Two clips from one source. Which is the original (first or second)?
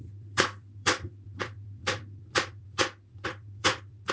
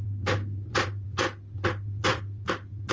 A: second